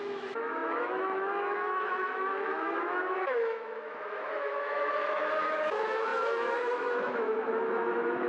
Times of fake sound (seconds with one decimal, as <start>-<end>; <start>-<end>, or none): 0.0-8.3